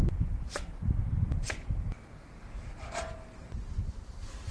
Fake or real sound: real